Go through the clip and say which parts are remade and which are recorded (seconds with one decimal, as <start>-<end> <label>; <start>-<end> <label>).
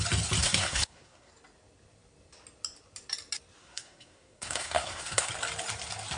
0.0-0.4 recorded; 0.4-1.3 remade; 1.3-3.6 recorded; 3.6-5.3 remade; 5.3-6.2 recorded